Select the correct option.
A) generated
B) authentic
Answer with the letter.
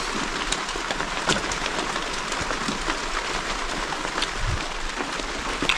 B